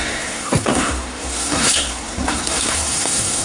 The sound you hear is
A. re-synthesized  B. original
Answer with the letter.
A